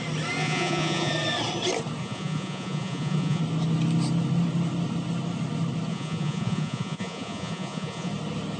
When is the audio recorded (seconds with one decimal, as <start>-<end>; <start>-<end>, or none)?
0.0-0.4; 1.1-2.0; 3.4-5.9; 8.1-8.6